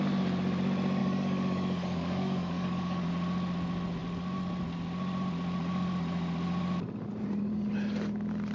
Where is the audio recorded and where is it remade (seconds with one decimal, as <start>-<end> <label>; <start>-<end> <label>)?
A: 0.0-1.0 recorded; 1.0-3.1 remade; 3.1-8.5 recorded